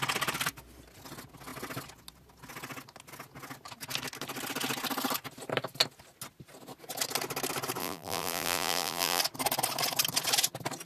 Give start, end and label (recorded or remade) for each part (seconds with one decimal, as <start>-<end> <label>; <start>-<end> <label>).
0.0-7.8 recorded; 7.8-9.2 remade; 9.2-10.9 recorded